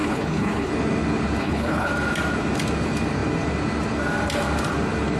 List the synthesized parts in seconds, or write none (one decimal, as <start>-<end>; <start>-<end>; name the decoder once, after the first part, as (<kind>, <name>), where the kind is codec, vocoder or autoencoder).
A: 0.0-0.7 (codec, HILCodec); 1.4-1.9